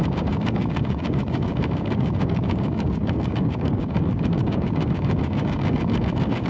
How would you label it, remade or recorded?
remade